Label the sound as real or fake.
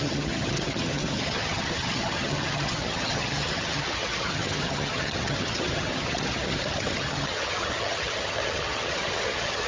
fake